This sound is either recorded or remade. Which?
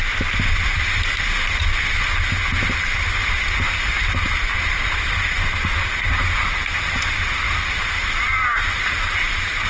recorded